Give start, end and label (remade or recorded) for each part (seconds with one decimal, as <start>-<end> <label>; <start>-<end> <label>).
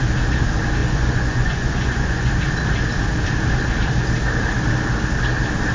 0.0-0.8 recorded; 0.8-2.3 remade; 2.3-5.7 recorded